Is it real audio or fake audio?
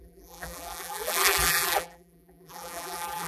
fake